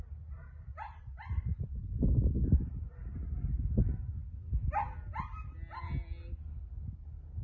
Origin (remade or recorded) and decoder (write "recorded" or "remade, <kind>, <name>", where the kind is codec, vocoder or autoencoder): recorded